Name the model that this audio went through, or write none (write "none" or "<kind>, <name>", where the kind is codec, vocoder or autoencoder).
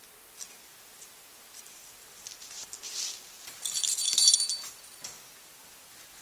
none